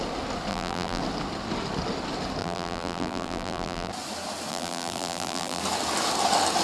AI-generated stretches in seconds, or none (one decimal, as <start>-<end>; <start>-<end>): 0.5-1.0; 2.4-3.9; 4.5-5.6